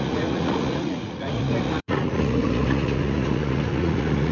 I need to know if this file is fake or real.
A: fake